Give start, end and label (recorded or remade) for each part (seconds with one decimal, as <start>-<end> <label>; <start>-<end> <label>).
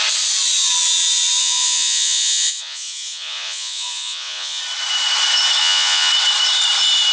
0.0-1.4 recorded; 1.4-4.6 remade; 4.6-5.6 recorded; 5.6-6.1 remade; 6.1-7.1 recorded